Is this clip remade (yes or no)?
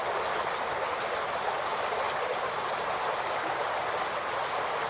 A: no